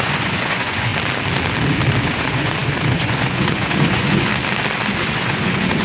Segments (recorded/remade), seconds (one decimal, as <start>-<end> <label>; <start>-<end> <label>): 0.0-0.9 remade; 0.9-2.0 recorded; 2.0-4.3 remade; 4.3-5.0 recorded; 5.0-5.8 remade